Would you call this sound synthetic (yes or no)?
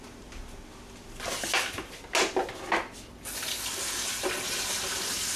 no